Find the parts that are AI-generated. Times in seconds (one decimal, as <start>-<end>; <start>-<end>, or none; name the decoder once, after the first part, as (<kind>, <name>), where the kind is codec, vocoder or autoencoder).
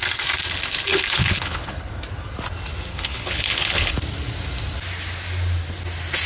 0.9-1.9 (codec, HILCodec); 2.9-3.9